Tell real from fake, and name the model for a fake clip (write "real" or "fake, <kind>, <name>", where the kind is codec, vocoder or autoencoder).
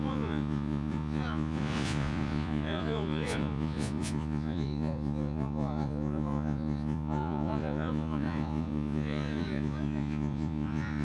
fake, vocoder, Vocos